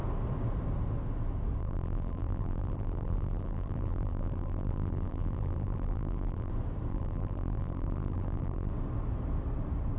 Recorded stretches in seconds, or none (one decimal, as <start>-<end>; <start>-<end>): 0.0-1.6; 6.5-6.9; 8.7-10.0